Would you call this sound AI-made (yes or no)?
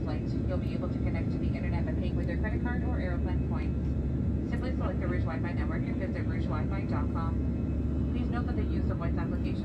no